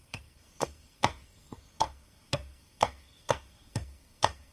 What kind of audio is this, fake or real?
fake